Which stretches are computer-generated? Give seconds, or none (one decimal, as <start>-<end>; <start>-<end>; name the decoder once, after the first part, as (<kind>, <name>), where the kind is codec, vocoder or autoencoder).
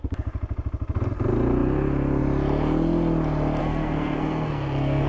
3.6-5.1 (codec, SNAC)